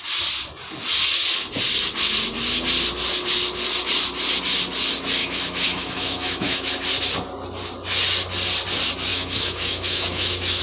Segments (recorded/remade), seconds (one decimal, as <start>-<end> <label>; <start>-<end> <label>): 0.0-5.2 recorded; 5.2-6.7 remade; 6.7-9.1 recorded; 9.1-10.6 remade